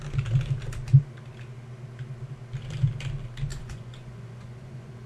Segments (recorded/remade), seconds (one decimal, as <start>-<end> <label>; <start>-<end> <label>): 0.0-3.5 recorded; 3.5-5.1 remade

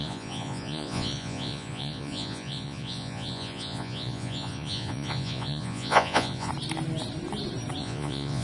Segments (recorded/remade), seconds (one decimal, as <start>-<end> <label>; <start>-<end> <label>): 0.0-6.5 remade; 6.5-7.8 recorded; 7.8-8.4 remade

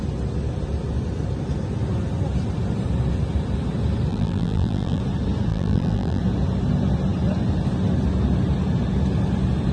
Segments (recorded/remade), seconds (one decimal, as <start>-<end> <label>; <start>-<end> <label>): 0.0-4.1 recorded; 4.1-5.0 remade; 5.0-5.5 recorded; 5.5-6.2 remade; 6.2-9.7 recorded

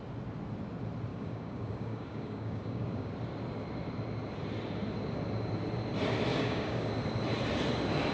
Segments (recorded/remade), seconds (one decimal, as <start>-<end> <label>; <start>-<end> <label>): 0.0-1.1 recorded; 1.1-3.1 remade; 3.1-6.3 recorded; 6.3-6.9 remade; 6.9-8.1 recorded

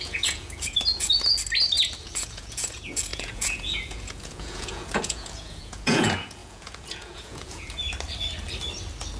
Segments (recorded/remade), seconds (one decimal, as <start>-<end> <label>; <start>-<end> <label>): 0.0-1.3 remade; 1.3-2.0 recorded; 2.0-7.8 remade; 7.8-9.2 recorded